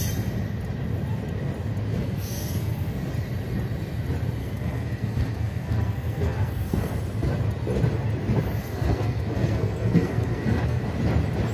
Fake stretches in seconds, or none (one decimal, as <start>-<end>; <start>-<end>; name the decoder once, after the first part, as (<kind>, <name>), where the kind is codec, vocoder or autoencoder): 1.9-2.9 (codec, SNAC); 4.4-6.9; 8.6-10.8